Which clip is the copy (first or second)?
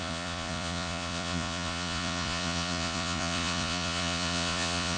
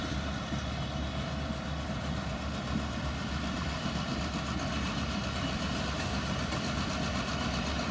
first